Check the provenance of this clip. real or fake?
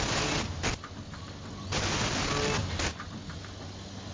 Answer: real